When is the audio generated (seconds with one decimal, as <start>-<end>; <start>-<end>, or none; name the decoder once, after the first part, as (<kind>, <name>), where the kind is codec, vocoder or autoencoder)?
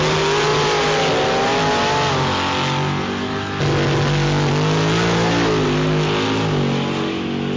none